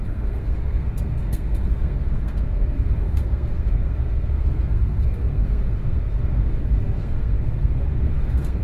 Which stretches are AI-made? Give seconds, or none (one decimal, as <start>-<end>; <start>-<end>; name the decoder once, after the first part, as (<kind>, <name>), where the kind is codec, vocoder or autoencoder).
0.0-8.6 (codec, SNAC)